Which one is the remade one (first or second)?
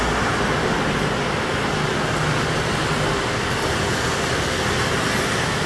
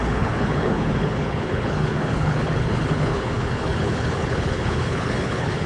second